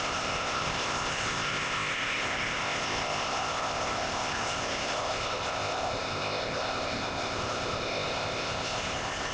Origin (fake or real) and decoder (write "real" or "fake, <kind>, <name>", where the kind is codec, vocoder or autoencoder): fake, codec, ZipCodec